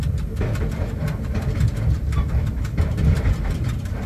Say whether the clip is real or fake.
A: real